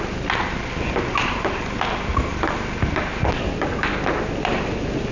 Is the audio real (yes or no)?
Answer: yes